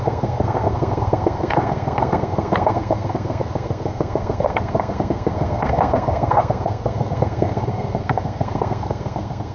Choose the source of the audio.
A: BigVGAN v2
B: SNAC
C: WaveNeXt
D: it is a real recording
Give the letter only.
B